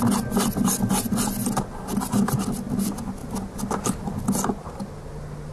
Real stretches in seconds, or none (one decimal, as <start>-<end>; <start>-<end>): 0.0-5.5